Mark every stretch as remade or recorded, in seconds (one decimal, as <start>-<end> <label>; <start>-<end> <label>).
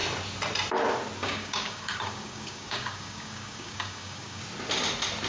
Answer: 0.0-1.2 recorded; 1.2-4.4 remade; 4.4-5.3 recorded